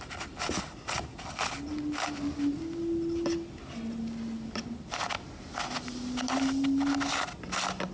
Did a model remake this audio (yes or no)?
no